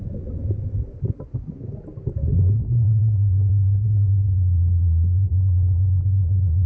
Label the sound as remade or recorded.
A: recorded